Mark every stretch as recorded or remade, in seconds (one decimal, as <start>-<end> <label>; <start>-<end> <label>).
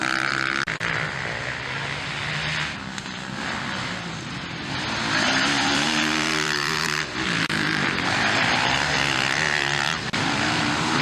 0.0-3.6 recorded; 3.6-11.0 remade